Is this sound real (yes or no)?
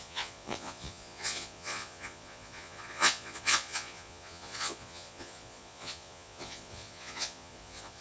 no